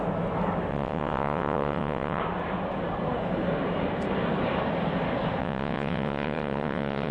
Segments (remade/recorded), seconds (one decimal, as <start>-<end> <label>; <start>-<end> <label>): 0.0-0.7 recorded; 0.7-2.2 remade; 2.2-5.4 recorded; 5.4-7.1 remade